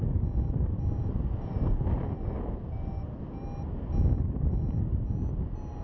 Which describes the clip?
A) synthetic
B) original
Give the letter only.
B